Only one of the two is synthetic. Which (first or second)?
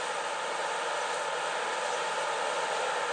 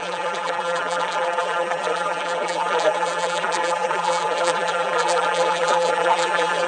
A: second